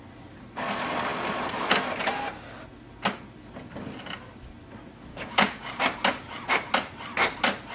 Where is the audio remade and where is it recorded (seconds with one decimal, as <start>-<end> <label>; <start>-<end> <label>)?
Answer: 0.0-5.1 recorded; 5.1-5.8 remade; 5.8-7.7 recorded